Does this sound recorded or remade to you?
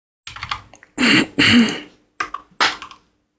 recorded